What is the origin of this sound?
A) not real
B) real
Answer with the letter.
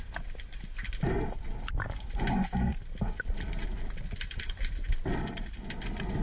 B